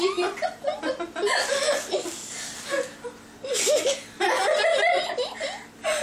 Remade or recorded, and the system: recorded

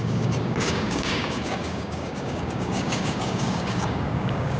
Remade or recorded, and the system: remade, codec, DAC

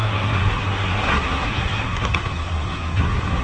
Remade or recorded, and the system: remade, codec, SNAC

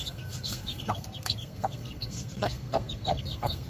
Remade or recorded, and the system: remade, codec, SNAC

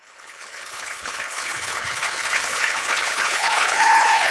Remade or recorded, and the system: remade, codec, HILCodec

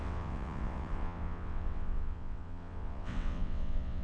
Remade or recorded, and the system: remade, vocoder, WaveNeXt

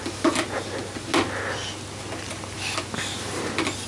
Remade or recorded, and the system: recorded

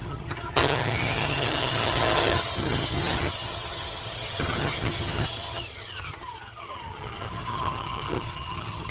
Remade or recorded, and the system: remade, vocoder, HiFi-GAN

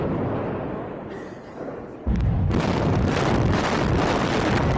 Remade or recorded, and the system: recorded